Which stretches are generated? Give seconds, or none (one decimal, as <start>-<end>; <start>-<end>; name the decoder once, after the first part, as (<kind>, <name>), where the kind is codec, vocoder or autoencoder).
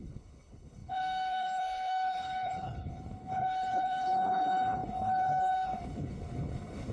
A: 0.0-6.9 (codec, HILCodec)